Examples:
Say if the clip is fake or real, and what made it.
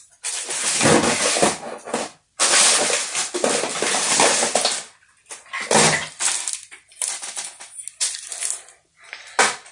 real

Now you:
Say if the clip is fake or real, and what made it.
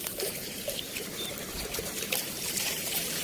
fake, vocoder, BigVGAN v2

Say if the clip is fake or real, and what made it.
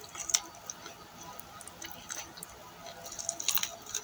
real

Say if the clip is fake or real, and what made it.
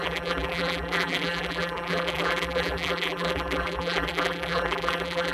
fake, vocoder, BigVGAN v2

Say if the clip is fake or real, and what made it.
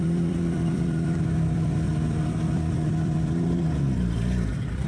fake, vocoder, BigVGAN v2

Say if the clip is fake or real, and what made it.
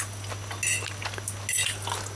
real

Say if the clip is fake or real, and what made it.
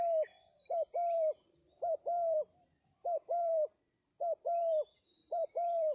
fake, vocoder, BigVGAN v2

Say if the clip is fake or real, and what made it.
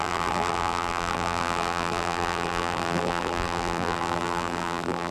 fake, vocoder, BigVGAN v2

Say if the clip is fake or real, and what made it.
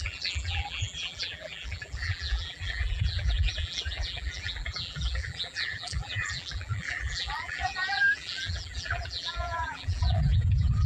fake, vocoder, BigVGAN v2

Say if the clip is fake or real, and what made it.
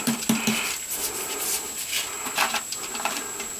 fake, vocoder, BigVGAN v2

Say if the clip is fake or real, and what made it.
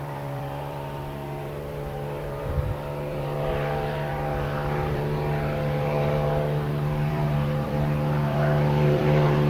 fake, vocoder, BigVGAN v2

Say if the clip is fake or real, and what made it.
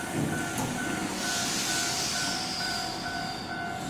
real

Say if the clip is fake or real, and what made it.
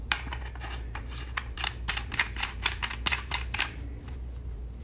fake, vocoder, BigVGAN v2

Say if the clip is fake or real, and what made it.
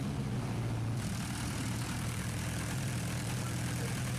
fake, vocoder, BigVGAN v2